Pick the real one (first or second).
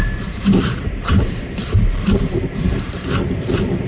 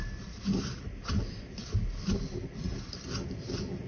second